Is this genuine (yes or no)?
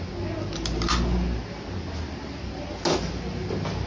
yes